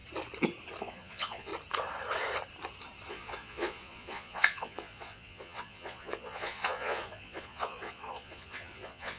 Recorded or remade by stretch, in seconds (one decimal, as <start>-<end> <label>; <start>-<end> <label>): 0.0-0.8 recorded; 0.8-1.5 remade; 1.5-3.1 recorded; 3.1-9.2 remade